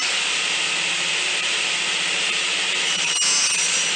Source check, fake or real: real